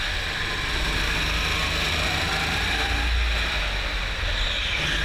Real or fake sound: real